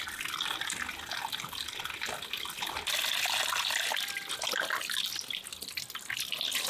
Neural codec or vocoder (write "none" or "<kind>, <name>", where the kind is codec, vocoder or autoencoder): none